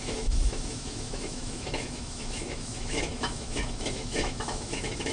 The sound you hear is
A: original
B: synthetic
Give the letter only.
B